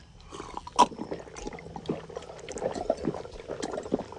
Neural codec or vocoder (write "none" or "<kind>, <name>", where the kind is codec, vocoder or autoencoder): none